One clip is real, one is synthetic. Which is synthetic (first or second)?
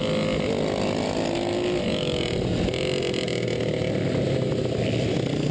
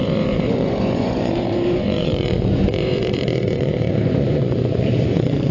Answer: second